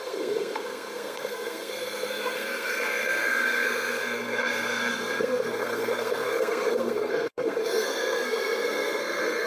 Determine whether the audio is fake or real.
fake